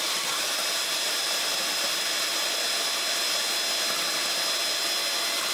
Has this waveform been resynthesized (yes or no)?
no